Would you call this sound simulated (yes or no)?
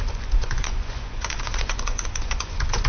yes